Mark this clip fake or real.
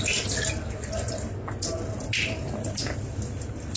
real